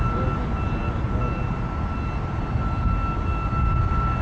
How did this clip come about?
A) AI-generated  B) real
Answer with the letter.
B